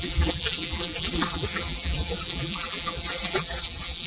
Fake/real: fake